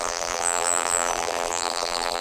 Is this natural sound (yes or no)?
no